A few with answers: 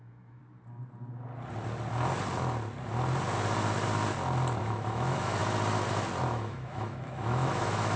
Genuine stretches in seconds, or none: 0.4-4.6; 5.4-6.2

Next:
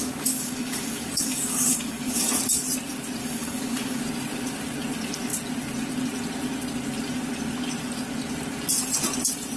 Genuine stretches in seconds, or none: 2.3-3.2; 4.0-9.6

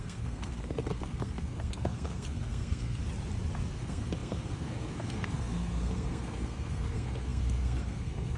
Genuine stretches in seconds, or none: 3.0-3.7

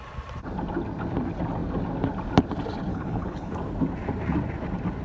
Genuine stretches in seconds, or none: 0.0-2.9; 3.5-5.0